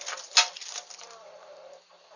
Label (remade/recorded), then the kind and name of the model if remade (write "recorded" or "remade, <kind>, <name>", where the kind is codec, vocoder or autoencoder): recorded